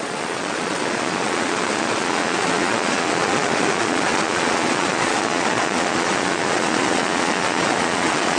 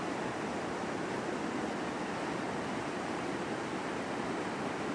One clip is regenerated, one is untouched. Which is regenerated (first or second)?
first